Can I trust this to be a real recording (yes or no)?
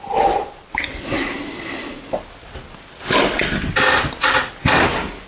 yes